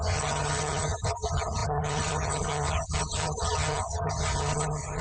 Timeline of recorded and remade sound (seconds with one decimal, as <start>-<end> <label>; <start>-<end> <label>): 0.0-5.0 remade